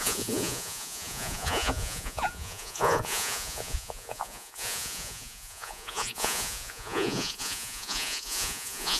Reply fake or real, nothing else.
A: fake